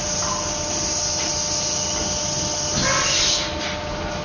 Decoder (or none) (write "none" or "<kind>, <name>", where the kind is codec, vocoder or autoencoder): none